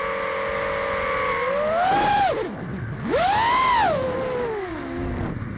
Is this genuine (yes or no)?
yes